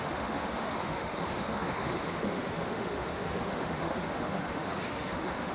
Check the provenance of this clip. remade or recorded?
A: remade